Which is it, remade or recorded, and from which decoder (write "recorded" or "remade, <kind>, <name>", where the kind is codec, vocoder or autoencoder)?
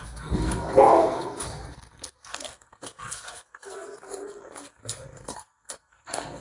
remade, codec, SNAC